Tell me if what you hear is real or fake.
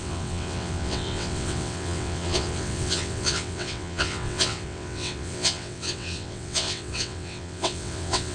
fake